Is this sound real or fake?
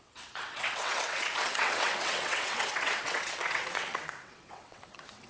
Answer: fake